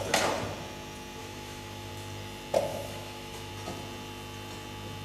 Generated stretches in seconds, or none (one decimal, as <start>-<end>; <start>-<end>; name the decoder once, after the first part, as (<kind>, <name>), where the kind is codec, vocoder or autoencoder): 1.2-1.9 (autoencoder, DAC-VAE); 2.7-3.5